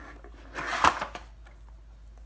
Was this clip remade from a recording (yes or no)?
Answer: no